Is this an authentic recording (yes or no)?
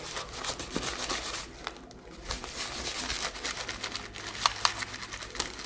yes